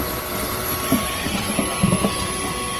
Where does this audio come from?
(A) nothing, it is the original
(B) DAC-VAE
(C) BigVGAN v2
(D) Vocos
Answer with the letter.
C